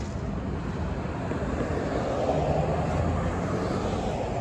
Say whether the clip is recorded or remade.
recorded